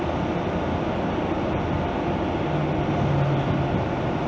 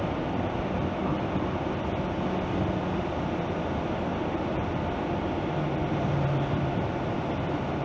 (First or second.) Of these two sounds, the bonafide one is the first